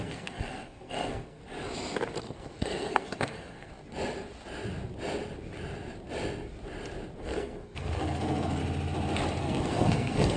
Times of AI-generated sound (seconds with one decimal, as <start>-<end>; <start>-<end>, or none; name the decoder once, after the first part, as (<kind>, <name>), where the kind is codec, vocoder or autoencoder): 0.0-1.4 (codec, SNAC); 2.2-3.7; 7.2-8.6; 9.4-10.4